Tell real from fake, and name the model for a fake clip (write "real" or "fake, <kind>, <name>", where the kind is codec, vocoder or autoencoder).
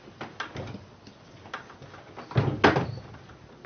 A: real